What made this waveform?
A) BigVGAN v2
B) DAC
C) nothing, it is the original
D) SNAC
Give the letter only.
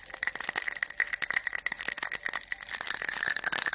C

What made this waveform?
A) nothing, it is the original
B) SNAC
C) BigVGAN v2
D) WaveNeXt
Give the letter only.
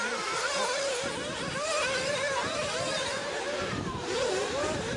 C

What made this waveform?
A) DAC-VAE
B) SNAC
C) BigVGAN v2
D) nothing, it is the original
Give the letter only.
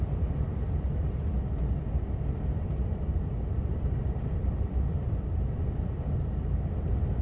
C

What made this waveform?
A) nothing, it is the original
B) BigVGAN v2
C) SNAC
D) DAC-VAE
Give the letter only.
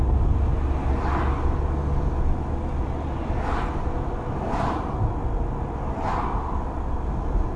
A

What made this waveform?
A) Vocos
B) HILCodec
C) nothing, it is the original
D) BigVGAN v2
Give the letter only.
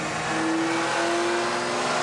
C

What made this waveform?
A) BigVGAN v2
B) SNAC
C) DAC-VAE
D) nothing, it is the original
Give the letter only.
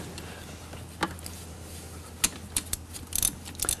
D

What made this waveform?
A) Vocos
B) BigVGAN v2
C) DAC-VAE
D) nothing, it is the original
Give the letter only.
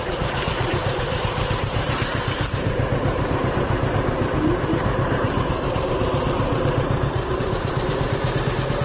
B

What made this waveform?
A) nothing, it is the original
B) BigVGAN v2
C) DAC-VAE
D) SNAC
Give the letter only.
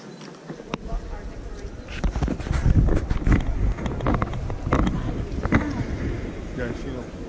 A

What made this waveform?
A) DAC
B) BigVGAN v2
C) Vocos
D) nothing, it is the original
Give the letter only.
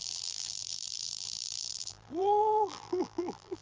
B